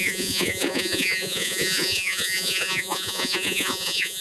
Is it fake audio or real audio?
fake